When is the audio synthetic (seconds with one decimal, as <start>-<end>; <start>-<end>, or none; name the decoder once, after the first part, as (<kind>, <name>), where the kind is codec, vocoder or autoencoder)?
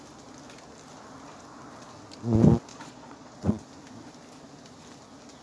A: 2.7-3.6 (vocoder, Vocos)